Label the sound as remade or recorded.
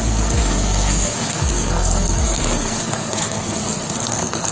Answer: remade